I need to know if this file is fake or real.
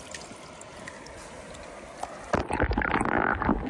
real